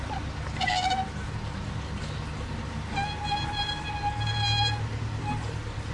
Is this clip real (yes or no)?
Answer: yes